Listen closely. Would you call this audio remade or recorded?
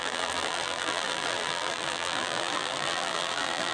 remade